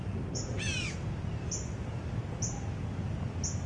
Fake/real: real